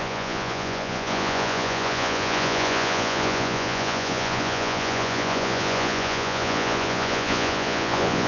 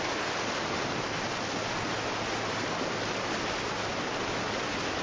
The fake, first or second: first